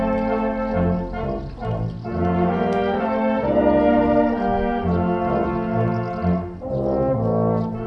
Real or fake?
real